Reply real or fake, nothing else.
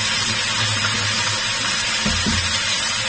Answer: real